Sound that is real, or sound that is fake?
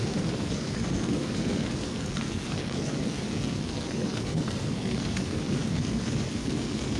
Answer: fake